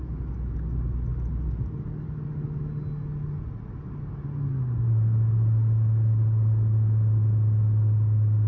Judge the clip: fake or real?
real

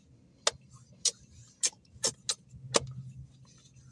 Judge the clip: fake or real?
real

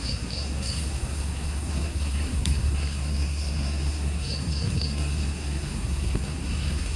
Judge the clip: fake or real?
fake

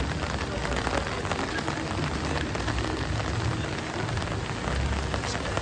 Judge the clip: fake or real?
real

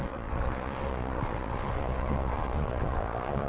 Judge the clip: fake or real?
fake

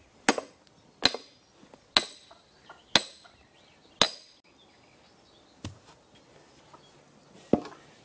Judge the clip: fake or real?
real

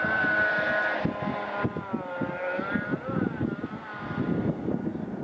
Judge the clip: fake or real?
real